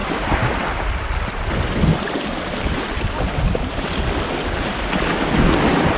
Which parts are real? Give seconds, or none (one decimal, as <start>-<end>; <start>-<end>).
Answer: 0.0-6.0